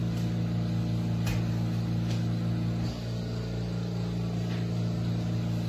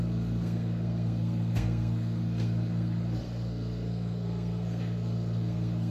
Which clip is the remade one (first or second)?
second